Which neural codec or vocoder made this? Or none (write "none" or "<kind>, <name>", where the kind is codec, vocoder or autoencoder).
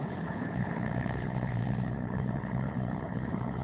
codec, HILCodec